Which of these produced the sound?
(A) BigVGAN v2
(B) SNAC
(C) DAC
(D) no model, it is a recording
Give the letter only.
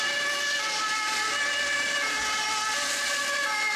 D